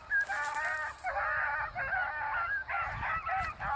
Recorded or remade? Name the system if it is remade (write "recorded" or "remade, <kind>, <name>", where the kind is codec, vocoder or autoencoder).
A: recorded